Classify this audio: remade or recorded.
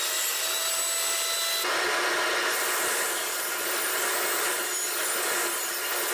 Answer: recorded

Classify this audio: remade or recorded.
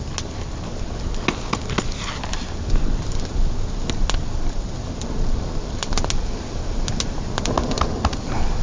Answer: recorded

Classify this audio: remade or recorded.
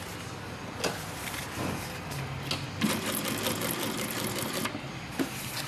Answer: recorded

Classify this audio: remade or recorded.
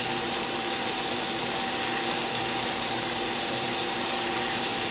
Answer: remade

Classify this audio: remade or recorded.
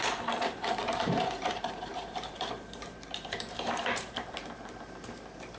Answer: remade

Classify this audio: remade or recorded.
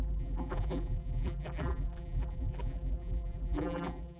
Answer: remade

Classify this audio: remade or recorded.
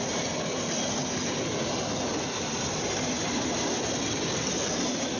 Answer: recorded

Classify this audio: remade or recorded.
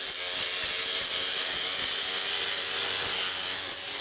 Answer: recorded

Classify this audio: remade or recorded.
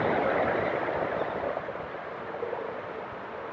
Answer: recorded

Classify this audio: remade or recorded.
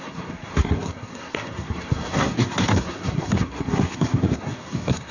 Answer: remade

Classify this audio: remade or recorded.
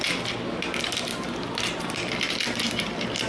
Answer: recorded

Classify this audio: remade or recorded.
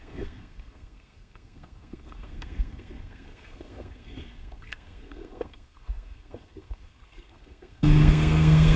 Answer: remade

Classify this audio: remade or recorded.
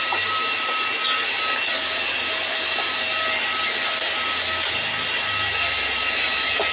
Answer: recorded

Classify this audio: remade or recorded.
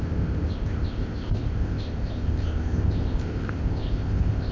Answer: remade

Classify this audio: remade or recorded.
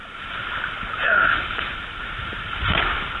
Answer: recorded